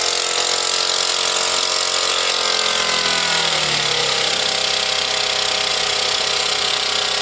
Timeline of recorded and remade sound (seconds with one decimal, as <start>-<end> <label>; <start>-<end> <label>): 0.0-5.7 recorded; 5.7-6.7 remade; 6.7-7.2 recorded